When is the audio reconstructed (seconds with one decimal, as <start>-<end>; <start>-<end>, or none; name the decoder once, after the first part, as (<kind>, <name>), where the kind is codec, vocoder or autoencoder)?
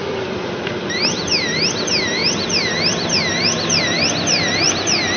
0.0-5.2 (vocoder, BigVGAN v2)